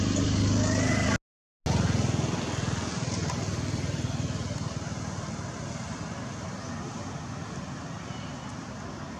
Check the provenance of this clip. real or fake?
real